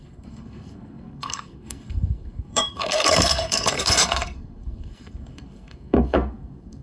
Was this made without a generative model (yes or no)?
no